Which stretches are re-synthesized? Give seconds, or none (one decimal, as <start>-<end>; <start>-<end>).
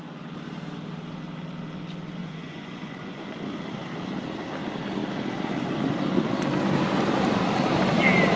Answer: 2.2-3.3